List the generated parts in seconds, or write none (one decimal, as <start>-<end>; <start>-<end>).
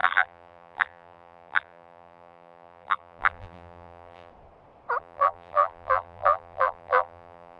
0.0-4.3; 5.0-7.6